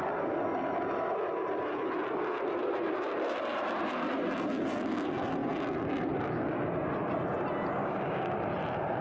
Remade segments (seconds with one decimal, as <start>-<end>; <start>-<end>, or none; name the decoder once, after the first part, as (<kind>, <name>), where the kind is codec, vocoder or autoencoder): 7.8-8.3 (codec, DAC)